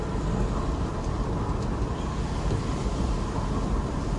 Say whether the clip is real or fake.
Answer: real